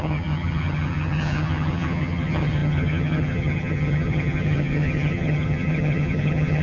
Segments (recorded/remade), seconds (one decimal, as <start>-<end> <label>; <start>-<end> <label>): 0.0-6.6 remade